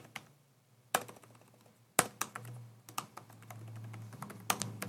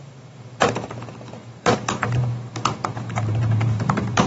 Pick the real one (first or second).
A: first